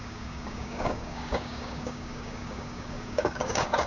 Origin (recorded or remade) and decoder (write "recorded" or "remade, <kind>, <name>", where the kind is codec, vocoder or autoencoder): remade, codec, DAC